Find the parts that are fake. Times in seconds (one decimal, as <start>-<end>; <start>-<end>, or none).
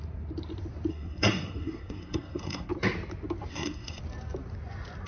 0.9-2.7; 3.5-4.0